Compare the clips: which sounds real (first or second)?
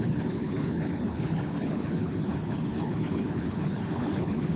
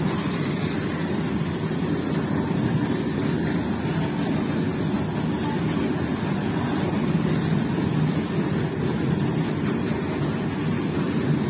second